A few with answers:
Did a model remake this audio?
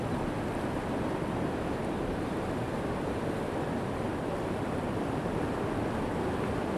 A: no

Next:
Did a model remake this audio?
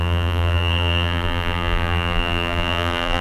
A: yes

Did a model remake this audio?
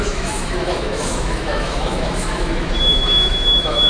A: yes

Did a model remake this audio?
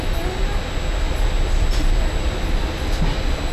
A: no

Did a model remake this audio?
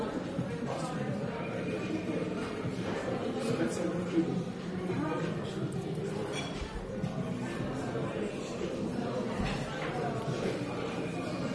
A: yes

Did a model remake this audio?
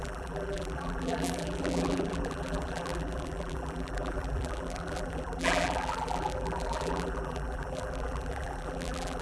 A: yes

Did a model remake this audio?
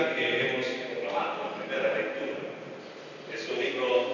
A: no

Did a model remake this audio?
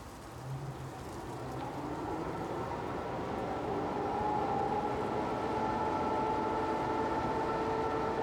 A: no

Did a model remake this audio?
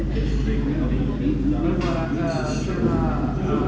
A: no